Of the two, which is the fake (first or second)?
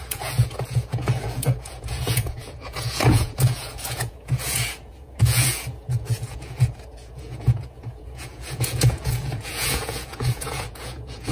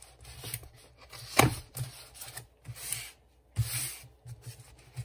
first